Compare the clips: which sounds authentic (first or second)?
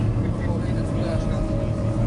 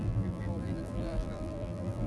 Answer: first